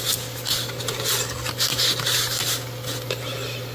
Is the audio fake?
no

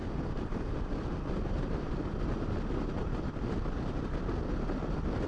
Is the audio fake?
no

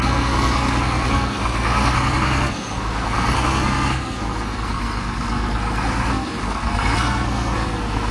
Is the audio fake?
yes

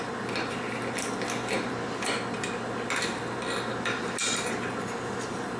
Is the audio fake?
no